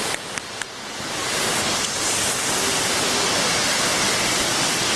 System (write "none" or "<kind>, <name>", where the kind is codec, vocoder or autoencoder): none